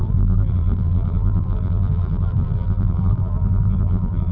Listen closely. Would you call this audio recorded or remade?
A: remade